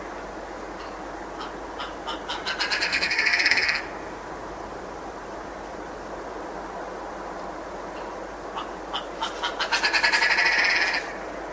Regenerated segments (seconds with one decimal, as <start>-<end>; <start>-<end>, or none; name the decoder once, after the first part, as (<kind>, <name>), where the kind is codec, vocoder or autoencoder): 2.9-3.8 (codec, SNAC)